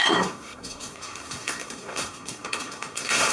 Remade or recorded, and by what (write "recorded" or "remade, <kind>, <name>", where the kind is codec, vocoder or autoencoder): remade, codec, SNAC